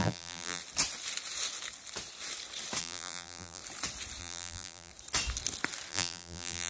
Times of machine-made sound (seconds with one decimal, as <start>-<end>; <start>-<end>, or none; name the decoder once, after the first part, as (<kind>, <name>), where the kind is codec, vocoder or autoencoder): 0.0-0.6 (vocoder, BigVGAN v2); 2.8-3.6; 4.2-4.9; 5.9-6.7